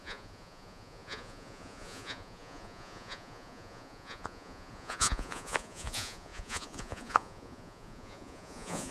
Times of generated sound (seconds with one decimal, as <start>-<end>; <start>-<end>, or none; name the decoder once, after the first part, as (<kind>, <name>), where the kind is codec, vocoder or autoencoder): 0.0-8.9 (vocoder, Vocos)